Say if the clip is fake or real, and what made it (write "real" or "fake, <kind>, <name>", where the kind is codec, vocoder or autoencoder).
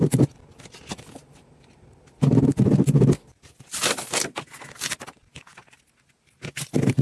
real